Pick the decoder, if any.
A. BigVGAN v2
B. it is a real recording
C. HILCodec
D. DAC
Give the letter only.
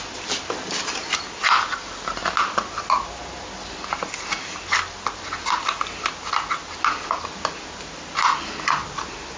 B